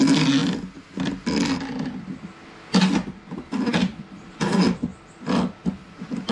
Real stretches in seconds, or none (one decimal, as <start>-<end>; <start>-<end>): 0.0-6.3